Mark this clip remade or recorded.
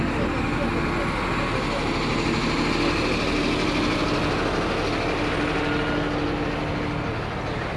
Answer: recorded